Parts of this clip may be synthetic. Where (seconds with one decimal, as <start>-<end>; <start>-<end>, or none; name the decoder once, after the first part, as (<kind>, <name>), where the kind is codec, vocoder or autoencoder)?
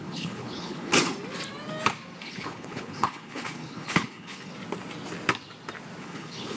0.0-0.9 (codec, HILCodec); 2.2-4.5; 6.0-6.6